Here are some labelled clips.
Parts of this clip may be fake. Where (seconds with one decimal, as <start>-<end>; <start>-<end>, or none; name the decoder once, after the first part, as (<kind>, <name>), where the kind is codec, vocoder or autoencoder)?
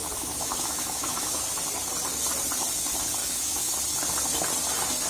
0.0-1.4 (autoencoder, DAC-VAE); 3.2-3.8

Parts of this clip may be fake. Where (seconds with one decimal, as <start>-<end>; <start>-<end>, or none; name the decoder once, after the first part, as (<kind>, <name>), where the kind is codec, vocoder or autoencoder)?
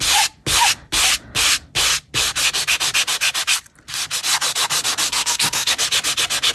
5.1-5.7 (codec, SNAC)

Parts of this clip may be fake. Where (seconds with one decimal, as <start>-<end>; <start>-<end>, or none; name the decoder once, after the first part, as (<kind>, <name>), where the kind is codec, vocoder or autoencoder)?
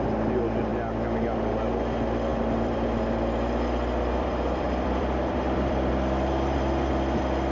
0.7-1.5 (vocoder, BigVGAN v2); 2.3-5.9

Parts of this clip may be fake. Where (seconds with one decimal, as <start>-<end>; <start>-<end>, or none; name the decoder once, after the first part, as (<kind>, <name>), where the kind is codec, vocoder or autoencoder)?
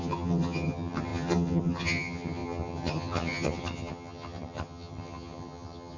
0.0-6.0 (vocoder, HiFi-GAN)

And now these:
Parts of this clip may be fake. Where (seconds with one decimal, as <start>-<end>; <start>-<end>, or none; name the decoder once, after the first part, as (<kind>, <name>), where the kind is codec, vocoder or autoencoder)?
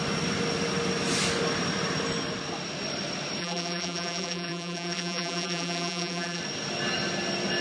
3.4-6.4 (vocoder, BigVGAN v2)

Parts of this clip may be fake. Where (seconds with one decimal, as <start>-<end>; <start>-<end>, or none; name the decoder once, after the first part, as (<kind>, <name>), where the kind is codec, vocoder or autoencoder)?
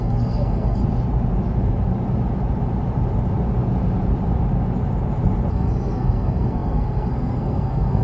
0.0-0.8 (codec, SNAC); 5.5-8.0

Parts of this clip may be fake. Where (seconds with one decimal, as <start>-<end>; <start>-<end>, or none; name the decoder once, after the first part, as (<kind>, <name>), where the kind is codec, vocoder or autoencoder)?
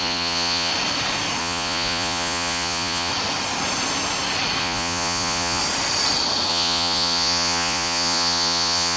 0.0-0.7 (vocoder, Vocos); 1.4-3.1; 4.6-5.6; 6.5-9.0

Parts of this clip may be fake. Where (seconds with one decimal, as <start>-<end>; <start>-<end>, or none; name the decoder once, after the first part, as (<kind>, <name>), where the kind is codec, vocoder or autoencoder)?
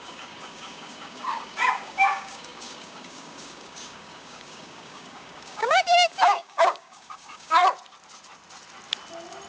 0.0-7.6 (codec, DAC)